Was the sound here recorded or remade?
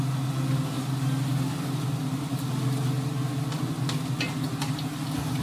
recorded